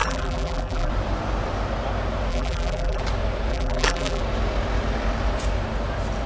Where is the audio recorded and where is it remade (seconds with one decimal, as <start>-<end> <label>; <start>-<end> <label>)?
0.0-0.9 remade; 0.9-2.3 recorded; 2.3-3.0 remade; 3.0-3.5 recorded; 3.5-4.2 remade; 4.2-6.3 recorded